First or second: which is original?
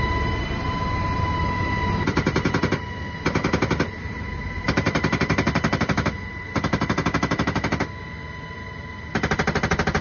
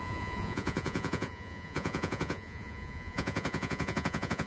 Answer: first